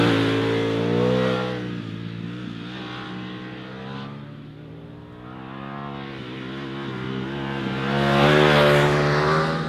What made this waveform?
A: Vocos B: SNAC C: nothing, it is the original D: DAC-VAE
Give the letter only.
C